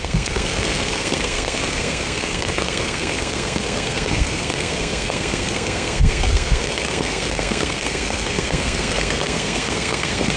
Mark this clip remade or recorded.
remade